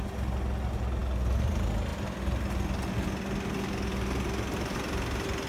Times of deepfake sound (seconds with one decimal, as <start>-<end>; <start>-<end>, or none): none